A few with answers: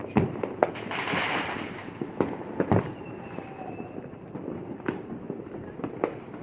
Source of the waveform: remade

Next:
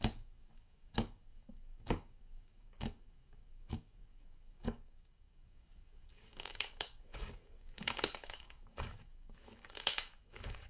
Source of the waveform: remade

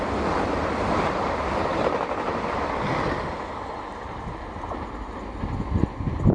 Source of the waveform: recorded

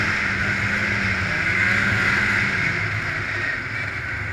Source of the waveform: recorded